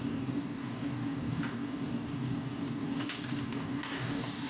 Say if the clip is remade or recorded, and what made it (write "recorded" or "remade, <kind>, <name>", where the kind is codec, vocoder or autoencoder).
remade, codec, DAC